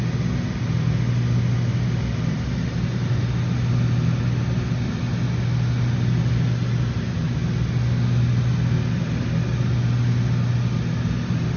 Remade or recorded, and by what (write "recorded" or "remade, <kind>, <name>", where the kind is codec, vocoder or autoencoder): recorded